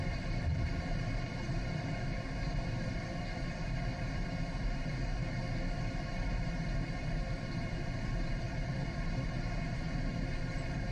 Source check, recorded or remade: remade